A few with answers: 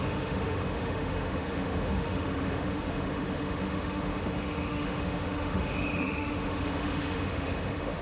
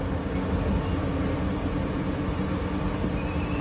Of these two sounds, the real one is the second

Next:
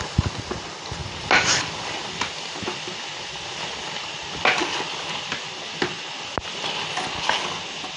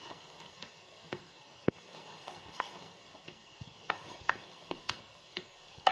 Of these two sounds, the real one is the first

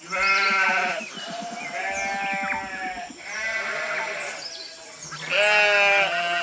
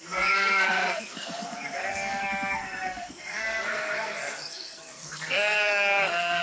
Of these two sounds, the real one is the first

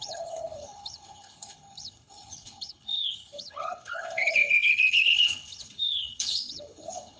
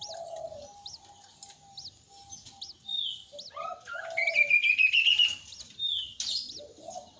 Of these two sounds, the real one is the second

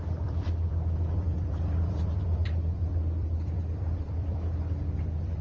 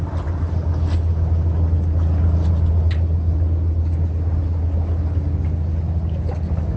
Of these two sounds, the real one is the second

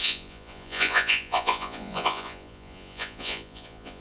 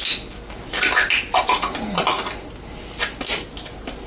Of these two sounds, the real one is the second